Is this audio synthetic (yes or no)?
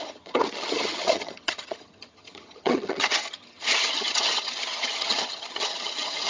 yes